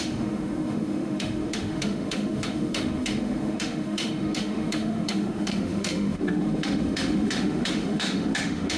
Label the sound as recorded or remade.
remade